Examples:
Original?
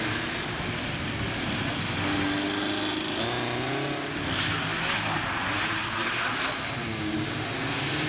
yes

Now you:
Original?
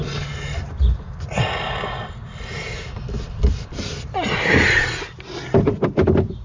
yes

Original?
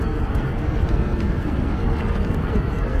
no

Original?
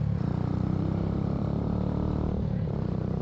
no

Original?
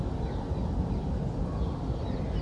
yes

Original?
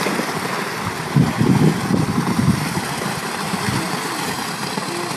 yes